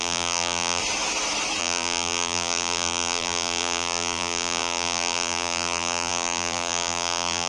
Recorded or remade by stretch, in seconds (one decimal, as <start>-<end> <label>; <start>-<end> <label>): 0.0-0.8 remade; 0.8-1.6 recorded; 1.6-7.5 remade